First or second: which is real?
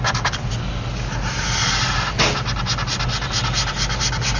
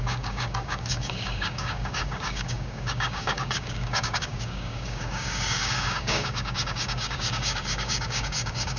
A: first